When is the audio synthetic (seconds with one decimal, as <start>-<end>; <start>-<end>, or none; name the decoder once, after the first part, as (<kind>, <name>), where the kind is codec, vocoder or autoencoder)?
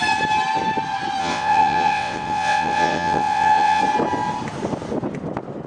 1.2-3.8 (vocoder, WaveNeXt)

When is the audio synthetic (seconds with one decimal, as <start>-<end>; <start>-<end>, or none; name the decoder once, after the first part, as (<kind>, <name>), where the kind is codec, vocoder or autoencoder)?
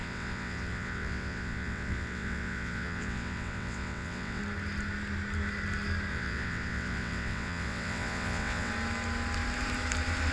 0.0-4.4 (vocoder, WaveNeXt); 6.1-8.7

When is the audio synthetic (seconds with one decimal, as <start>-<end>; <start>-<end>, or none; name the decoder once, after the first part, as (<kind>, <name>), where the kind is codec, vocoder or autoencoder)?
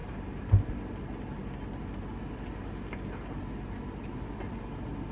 none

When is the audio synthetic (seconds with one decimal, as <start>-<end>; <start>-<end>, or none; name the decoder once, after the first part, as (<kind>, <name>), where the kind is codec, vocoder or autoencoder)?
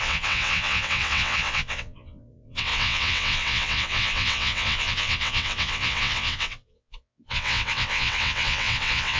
0.0-9.2 (vocoder, WaveNeXt)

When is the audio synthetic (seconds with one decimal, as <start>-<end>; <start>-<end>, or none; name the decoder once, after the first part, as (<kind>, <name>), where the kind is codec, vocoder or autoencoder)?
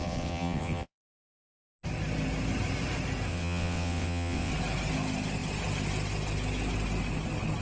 0.0-1.5 (vocoder, WaveNeXt); 3.3-4.5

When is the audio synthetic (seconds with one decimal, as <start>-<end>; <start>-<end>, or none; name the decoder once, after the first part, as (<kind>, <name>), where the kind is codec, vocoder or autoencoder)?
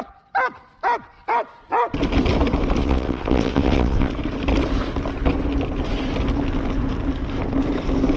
2.8-4.1 (vocoder, WaveNeXt)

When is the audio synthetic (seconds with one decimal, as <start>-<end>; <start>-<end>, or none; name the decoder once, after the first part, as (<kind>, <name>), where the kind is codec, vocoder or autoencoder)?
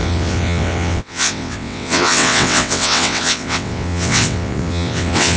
0.0-5.4 (vocoder, WaveNeXt)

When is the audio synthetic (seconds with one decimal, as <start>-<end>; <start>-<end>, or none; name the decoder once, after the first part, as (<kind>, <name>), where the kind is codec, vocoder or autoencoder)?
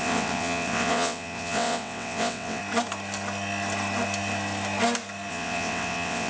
0.0-2.6 (vocoder, WaveNeXt); 5.3-6.3